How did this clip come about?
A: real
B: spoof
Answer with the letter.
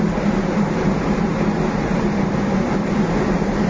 B